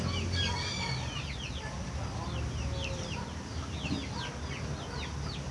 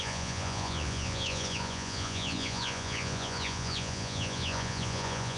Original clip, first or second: first